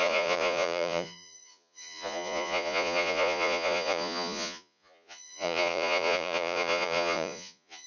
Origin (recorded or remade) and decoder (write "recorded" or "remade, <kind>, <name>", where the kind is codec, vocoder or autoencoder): remade, vocoder, Vocos